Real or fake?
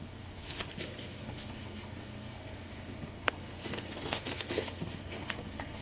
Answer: fake